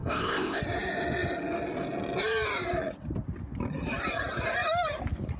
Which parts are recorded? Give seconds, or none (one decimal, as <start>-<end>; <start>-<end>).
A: 0.6-5.4